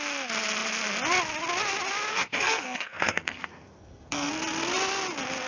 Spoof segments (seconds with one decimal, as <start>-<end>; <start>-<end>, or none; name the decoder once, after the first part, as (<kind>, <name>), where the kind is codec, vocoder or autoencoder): 2.1-4.3 (codec, SNAC)